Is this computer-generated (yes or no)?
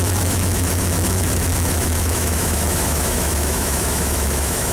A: yes